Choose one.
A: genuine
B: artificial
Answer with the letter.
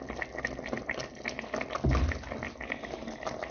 A